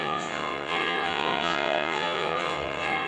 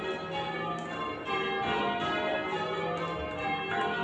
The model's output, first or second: first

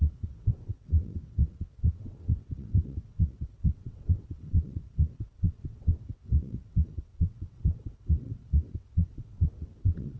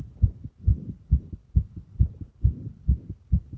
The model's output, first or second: first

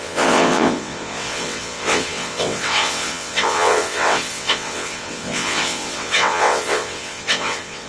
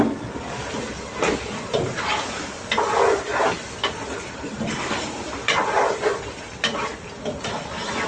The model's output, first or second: first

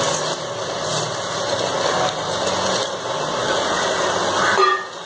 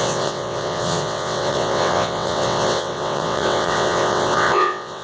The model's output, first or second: second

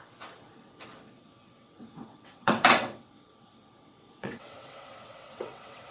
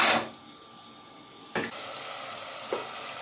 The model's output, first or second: first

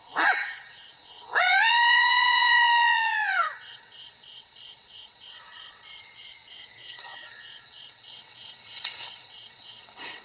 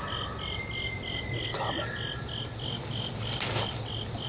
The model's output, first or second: first